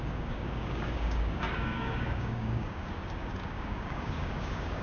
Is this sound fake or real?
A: fake